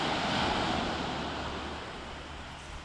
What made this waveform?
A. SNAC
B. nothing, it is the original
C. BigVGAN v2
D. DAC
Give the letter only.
B